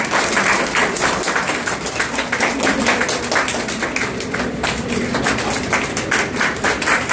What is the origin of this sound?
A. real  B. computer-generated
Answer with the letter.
A